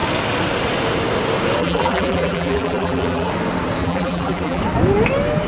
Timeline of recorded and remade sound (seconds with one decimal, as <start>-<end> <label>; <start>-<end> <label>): 0.0-1.6 recorded; 1.6-3.3 remade; 3.3-3.8 recorded; 3.8-4.6 remade; 4.6-5.5 recorded